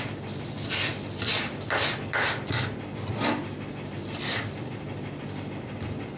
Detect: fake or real real